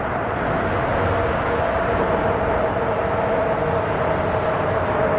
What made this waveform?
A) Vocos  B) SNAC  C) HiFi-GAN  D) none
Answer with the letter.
D